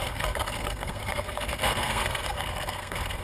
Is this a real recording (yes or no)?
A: no